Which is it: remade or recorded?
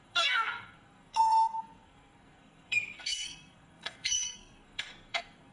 remade